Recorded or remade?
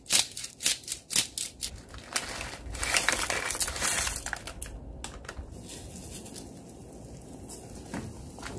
recorded